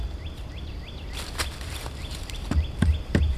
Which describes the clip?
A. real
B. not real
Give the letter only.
A